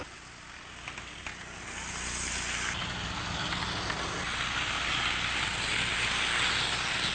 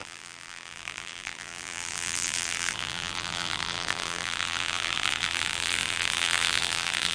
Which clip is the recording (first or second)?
first